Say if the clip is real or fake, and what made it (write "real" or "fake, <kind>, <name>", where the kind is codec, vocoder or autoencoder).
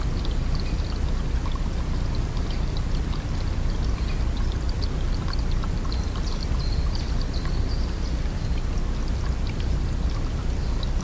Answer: real